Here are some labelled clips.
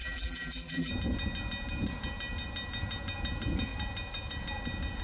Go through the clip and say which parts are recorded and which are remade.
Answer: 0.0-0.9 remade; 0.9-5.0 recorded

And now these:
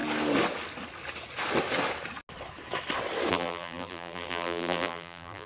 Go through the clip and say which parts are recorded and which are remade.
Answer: 0.0-3.3 recorded; 3.3-5.5 remade

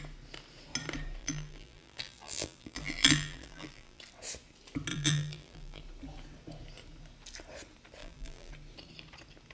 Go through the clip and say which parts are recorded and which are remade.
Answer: 0.0-1.2 recorded; 1.2-4.0 remade; 4.0-4.9 recorded; 4.9-5.8 remade; 5.8-8.0 recorded; 8.0-8.5 remade; 8.5-9.5 recorded

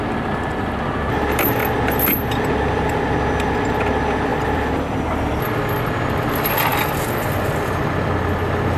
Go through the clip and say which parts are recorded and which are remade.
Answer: 0.0-4.3 recorded; 4.3-5.4 remade; 5.4-6.7 recorded; 6.7-7.7 remade; 7.7-8.8 recorded

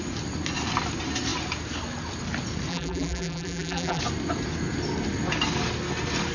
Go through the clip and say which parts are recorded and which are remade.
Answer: 0.0-2.7 recorded; 2.7-4.0 remade; 4.0-6.3 recorded